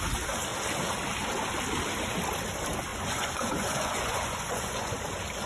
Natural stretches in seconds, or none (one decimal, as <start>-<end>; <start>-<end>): 0.0-2.9; 5.0-5.5